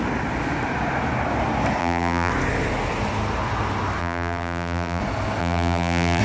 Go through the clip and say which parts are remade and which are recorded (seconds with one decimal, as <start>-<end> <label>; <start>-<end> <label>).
0.0-1.8 recorded; 1.8-2.3 remade; 2.3-4.0 recorded; 4.0-5.0 remade; 5.0-5.4 recorded; 5.4-6.2 remade